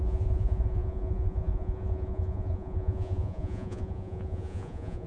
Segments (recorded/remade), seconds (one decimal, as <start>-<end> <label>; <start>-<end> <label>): 0.0-5.1 remade